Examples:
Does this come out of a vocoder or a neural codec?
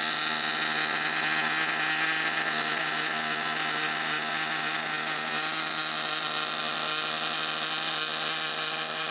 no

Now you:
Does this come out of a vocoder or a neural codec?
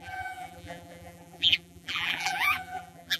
yes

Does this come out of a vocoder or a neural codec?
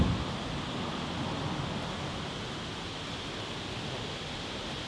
no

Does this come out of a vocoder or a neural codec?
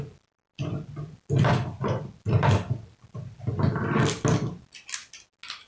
no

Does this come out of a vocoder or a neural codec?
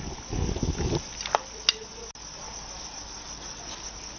no